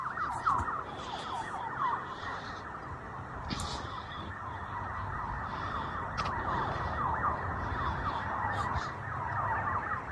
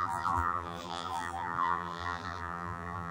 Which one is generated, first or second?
second